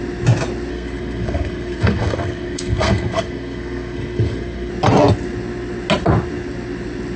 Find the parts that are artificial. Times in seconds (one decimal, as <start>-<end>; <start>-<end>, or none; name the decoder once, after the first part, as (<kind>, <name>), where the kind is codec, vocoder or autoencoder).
0.7-4.7 (codec, SNAC)